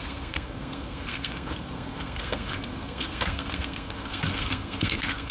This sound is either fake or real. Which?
fake